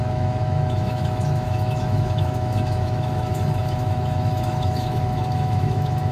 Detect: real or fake fake